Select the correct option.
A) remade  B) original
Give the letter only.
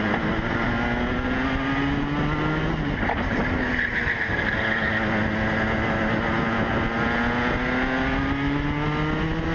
B